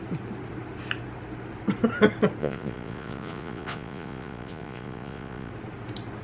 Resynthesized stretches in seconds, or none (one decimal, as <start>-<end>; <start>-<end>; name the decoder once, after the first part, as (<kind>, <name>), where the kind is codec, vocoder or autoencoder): 2.4-5.5 (vocoder, Vocos)